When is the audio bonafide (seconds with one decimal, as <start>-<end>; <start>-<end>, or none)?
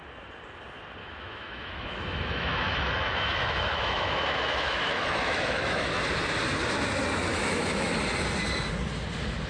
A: 0.0-1.0; 6.0-7.3; 7.9-9.5